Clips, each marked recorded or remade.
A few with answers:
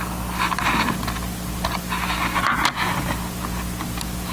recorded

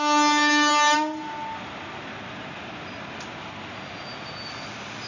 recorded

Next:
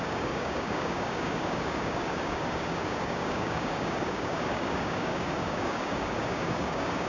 remade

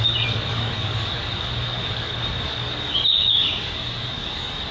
remade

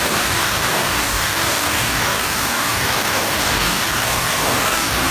remade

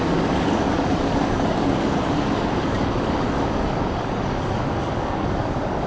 remade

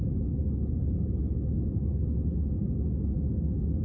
recorded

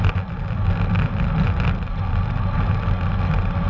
recorded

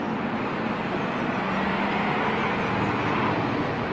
recorded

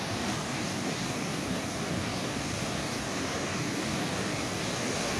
remade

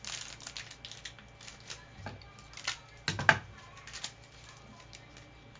recorded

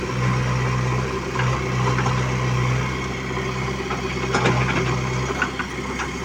recorded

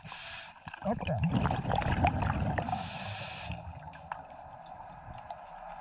recorded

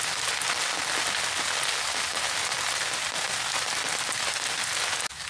recorded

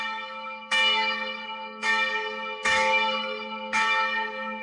remade